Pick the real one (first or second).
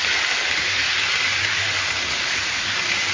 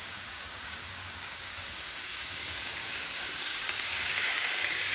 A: first